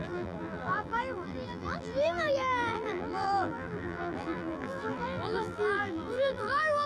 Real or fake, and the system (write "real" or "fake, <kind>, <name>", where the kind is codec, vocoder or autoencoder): fake, vocoder, BigVGAN v2